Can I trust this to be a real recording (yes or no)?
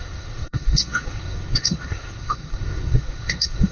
no